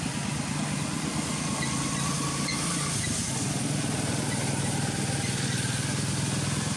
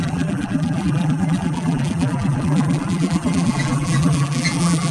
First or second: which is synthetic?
second